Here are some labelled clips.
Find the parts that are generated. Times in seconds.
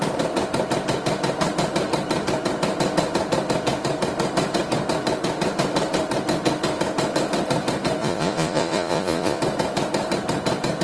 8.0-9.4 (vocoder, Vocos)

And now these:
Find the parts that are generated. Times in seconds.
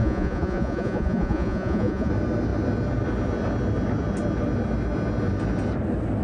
0.0-2.1 (vocoder, Vocos)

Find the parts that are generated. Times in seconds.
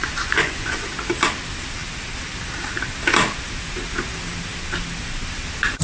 0.0-0.9 (vocoder, Vocos)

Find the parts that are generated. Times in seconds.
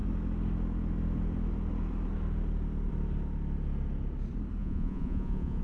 4.6-5.6 (vocoder, Vocos)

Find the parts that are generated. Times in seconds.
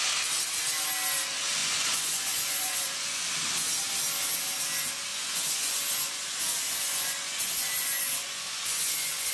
1.6-3.2 (vocoder, Vocos); 5.1-9.3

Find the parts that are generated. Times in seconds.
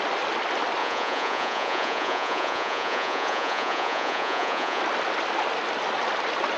0.8-4.8 (vocoder, Vocos)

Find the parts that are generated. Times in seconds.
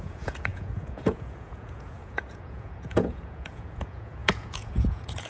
0.0-5.3 (vocoder, Vocos)